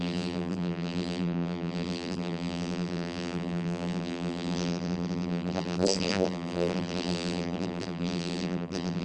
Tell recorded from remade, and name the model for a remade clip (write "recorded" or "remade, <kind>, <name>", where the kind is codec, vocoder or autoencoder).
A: remade, vocoder, BigVGAN v2